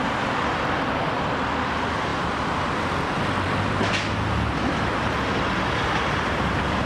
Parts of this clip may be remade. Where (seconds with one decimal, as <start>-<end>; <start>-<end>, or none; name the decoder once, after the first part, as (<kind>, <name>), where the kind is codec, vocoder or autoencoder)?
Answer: none